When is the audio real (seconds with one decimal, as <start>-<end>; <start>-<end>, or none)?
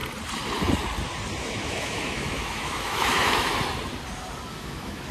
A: 0.0-1.4; 3.5-4.5